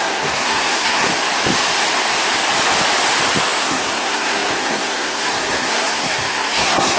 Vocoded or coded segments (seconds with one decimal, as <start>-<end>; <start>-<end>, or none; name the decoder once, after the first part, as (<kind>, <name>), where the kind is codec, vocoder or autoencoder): 0.0-1.1 (codec, SNAC); 3.6-7.0